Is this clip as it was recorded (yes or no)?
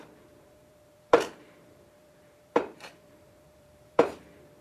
no